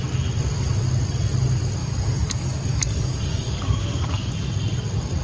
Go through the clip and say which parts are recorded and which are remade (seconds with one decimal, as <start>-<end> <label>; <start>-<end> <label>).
0.0-1.8 recorded; 1.8-4.3 remade; 4.3-5.2 recorded